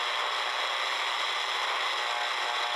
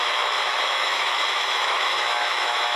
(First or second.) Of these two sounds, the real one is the first